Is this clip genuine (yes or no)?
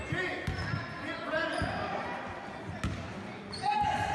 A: yes